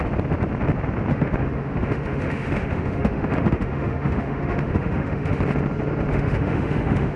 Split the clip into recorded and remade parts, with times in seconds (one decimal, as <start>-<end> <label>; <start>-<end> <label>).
0.0-1.1 recorded; 1.1-5.4 remade; 5.4-6.1 recorded; 6.1-7.2 remade